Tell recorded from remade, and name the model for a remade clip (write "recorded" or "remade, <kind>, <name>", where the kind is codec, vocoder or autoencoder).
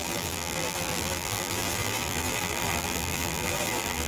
remade, vocoder, BigVGAN v2